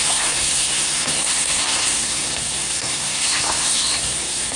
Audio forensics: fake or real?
fake